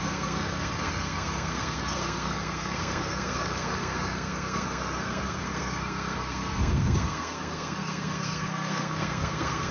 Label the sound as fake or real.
fake